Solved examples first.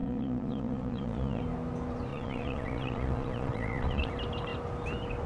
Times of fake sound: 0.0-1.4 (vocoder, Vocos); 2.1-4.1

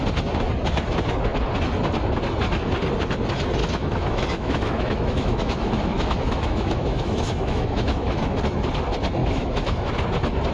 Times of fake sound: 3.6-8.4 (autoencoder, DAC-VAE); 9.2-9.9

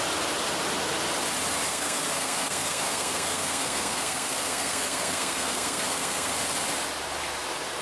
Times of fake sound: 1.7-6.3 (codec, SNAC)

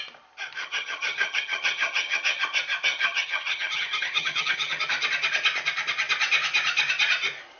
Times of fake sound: 0.6-2.4 (vocoder, HiFi-GAN); 2.9-4.8

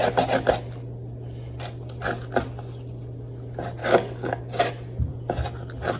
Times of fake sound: 3.8-4.7 (codec, DAC)